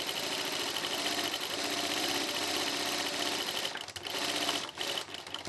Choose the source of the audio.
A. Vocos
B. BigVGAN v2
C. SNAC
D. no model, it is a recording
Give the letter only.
D